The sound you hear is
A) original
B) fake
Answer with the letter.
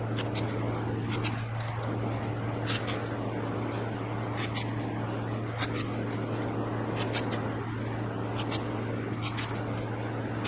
A